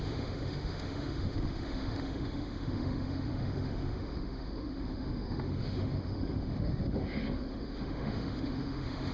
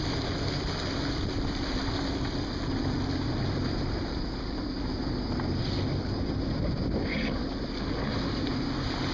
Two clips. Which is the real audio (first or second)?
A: second